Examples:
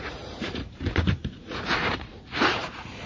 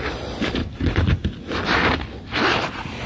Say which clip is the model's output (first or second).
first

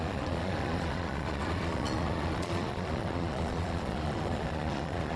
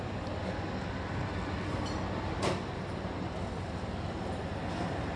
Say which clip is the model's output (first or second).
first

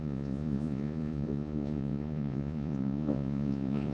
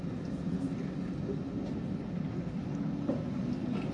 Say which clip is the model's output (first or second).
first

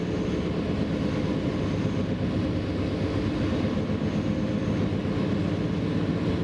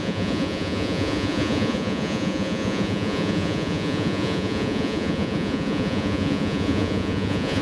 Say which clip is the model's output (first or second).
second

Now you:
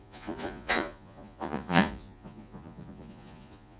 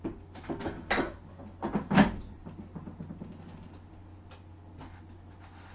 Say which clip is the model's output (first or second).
first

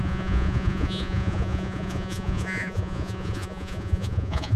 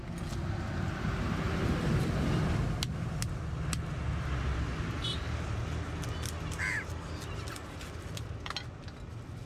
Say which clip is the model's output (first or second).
first